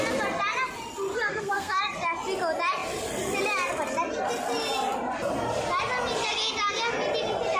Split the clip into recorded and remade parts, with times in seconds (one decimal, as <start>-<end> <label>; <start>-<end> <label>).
0.0-1.3 recorded; 1.3-1.8 remade; 1.8-7.6 recorded